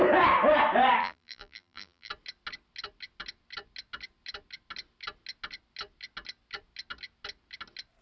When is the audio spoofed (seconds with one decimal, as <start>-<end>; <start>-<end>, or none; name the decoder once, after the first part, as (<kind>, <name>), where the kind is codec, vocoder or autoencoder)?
1.0-2.1 (vocoder, BigVGAN v2)

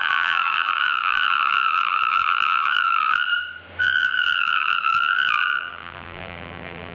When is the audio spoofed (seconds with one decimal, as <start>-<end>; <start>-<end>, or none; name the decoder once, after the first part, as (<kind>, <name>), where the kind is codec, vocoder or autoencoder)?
0.0-3.3 (vocoder, BigVGAN v2); 3.8-6.9

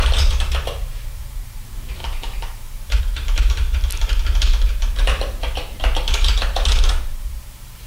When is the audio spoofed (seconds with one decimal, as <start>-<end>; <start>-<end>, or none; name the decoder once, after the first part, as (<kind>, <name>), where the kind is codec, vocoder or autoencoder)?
0.0-7.9 (vocoder, BigVGAN v2)

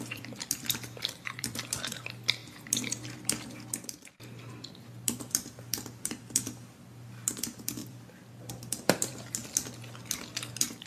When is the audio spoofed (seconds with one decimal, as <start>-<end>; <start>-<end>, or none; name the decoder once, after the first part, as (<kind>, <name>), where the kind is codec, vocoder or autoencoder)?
0.0-2.4 (vocoder, BigVGAN v2); 4.8-9.4; 10.5-10.9

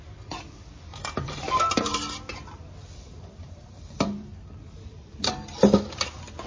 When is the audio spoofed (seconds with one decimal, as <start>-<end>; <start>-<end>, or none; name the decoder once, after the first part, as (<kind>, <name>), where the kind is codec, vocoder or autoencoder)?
0.9-1.6 (vocoder, BigVGAN v2); 3.1-5.3

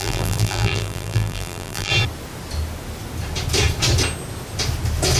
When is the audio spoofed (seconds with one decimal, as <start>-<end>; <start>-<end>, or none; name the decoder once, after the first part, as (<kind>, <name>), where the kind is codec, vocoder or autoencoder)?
0.0-1.9 (vocoder, BigVGAN v2)

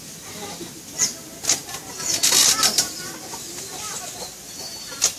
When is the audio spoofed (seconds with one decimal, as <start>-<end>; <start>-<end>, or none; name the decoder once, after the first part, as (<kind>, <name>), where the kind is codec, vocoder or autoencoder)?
none

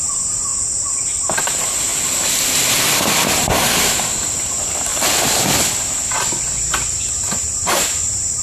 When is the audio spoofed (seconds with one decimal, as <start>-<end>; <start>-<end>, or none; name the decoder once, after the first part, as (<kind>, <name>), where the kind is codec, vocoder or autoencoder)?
0.0-0.5 (vocoder, BigVGAN v2); 1.4-1.9; 3.3-4.9; 7.0-8.4